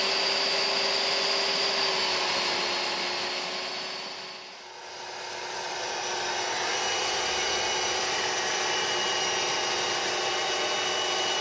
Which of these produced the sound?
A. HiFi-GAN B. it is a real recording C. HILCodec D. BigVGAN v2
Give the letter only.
B